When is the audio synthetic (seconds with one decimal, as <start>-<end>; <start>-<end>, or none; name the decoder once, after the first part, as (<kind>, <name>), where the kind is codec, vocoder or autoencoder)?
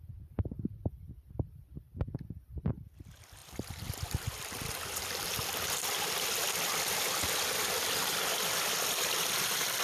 3.4-8.2 (vocoder, BigVGAN v2)